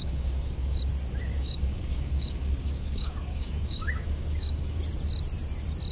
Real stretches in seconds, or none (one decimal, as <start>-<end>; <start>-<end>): 0.8-1.3; 4.8-5.9